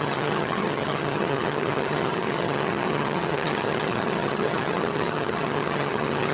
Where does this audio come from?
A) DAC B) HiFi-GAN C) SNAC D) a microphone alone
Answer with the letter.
B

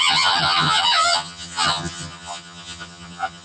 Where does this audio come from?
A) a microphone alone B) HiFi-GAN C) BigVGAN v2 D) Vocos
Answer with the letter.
B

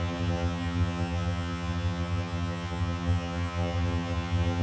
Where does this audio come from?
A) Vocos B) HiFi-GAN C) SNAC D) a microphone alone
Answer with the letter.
B